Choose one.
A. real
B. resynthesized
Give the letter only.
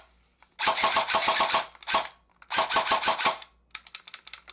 A